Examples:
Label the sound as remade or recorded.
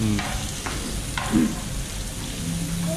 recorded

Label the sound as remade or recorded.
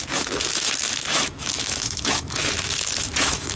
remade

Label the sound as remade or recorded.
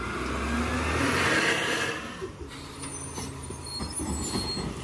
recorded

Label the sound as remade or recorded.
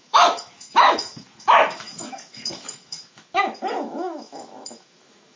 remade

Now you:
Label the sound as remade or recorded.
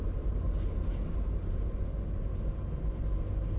recorded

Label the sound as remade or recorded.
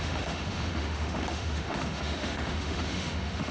remade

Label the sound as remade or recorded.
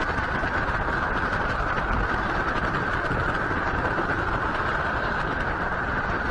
recorded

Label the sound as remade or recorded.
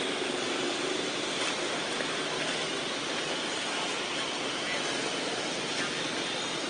recorded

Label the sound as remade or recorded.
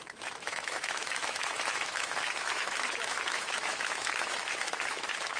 remade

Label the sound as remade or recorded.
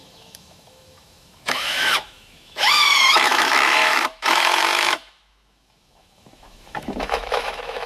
remade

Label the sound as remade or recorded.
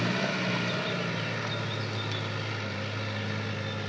recorded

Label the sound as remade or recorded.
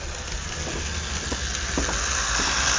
recorded